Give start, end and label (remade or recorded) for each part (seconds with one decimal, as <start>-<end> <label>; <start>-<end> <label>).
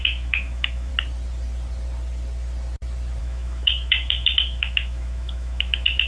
0.0-0.9 remade; 0.9-3.2 recorded; 3.2-6.1 remade